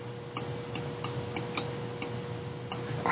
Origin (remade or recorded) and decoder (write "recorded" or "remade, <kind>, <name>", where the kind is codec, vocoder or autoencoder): recorded